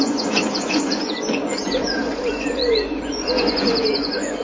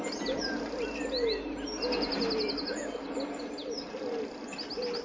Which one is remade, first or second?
first